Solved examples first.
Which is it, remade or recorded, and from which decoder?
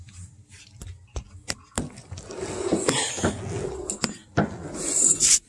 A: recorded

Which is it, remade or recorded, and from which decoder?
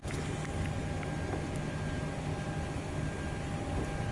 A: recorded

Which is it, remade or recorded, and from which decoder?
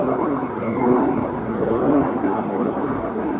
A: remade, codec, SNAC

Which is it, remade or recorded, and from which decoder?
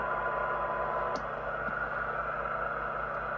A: recorded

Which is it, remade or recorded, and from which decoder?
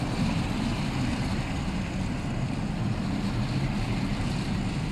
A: recorded